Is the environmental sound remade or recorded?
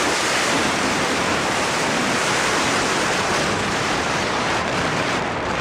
remade